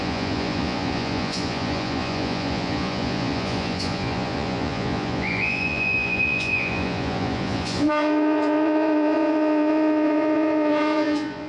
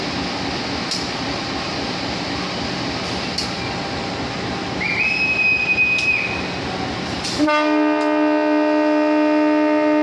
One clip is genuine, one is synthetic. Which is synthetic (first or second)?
first